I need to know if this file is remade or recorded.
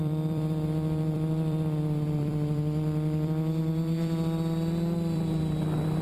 remade